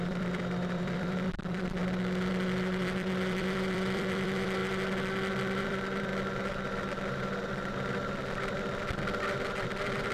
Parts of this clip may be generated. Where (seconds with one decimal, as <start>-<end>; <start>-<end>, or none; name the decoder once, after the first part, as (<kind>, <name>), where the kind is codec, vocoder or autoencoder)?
0.0-1.8 (vocoder, BigVGAN v2); 2.3-6.1; 9.5-10.1

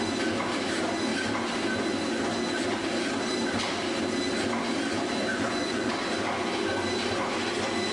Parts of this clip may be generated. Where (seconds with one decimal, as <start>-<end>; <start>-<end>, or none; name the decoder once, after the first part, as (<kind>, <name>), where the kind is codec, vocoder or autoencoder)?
5.3-5.9 (vocoder, Vocos)

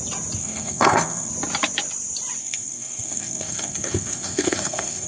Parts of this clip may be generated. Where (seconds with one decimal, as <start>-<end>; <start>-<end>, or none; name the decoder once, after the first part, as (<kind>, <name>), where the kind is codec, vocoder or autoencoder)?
0.4-1.3 (codec, SNAC); 2.4-5.1

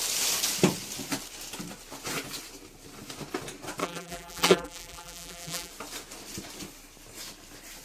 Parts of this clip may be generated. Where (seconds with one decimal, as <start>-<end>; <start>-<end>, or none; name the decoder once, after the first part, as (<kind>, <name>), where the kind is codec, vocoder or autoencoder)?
3.8-5.7 (vocoder, BigVGAN v2)

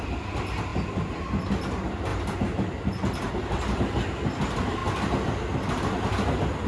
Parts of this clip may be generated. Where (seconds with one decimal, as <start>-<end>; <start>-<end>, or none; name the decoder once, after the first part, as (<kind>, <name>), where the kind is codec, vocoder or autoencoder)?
none

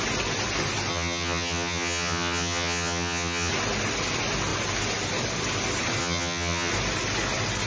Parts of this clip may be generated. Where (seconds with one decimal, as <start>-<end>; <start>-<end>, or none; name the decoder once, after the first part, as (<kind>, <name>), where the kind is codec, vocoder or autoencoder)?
0.9-3.5 (vocoder, HiFi-GAN); 6.0-6.7

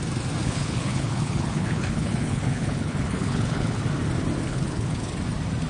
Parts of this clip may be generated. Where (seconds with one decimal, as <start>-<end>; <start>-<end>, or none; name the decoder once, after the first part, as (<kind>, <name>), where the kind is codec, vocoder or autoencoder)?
0.4-3.8 (codec, HILCodec); 4.5-5.1

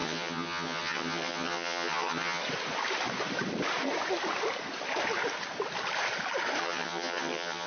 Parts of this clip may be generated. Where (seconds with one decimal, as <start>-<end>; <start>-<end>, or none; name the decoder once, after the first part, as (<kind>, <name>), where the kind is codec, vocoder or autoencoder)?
0.0-2.4 (vocoder, HiFi-GAN); 6.6-7.7